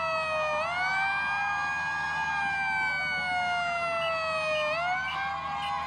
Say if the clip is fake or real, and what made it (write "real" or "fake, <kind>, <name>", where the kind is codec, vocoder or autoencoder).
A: real